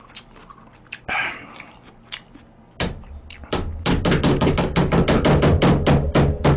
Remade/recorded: recorded